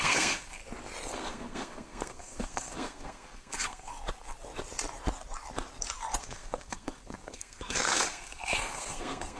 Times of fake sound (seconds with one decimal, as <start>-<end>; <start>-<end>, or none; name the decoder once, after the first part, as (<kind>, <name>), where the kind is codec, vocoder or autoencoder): 0.0-0.6 (codec, SNAC); 1.1-3.9; 6.2-9.4